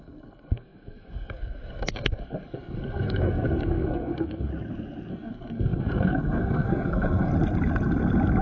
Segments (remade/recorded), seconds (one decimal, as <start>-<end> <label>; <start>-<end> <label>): 0.0-4.5 remade; 4.5-5.1 recorded; 5.1-7.3 remade; 7.3-8.4 recorded

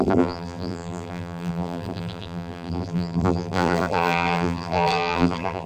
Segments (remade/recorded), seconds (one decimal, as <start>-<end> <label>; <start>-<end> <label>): 0.0-5.7 remade

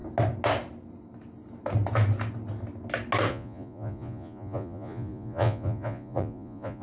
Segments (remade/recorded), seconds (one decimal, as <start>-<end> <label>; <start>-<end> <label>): 0.0-3.3 recorded; 3.3-6.8 remade

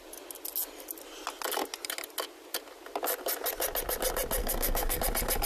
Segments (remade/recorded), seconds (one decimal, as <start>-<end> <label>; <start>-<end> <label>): 0.0-4.4 recorded; 4.4-5.0 remade; 5.0-5.5 recorded

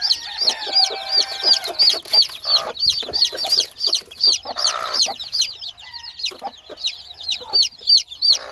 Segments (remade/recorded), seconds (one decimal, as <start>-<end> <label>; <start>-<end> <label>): 0.0-8.5 recorded

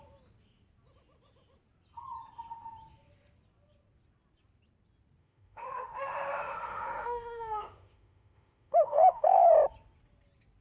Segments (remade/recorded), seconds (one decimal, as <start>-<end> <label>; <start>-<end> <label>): 0.0-5.2 recorded; 5.2-9.5 remade; 9.5-10.6 recorded